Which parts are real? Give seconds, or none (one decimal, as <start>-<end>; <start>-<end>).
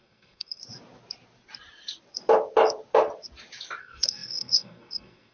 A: 0.6-3.8